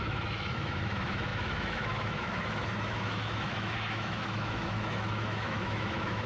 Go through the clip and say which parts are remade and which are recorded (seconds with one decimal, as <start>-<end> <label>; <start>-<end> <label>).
0.0-6.3 remade